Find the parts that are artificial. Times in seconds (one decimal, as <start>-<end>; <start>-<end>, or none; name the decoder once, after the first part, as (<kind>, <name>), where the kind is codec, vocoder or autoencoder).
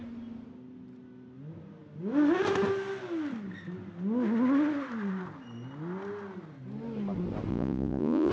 7.5-8.3 (vocoder, Vocos)